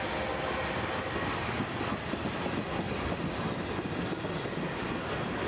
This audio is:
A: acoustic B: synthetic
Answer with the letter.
A